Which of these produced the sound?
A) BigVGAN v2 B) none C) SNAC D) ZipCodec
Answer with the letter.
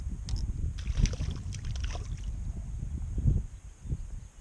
B